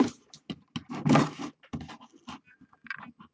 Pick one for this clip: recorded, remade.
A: recorded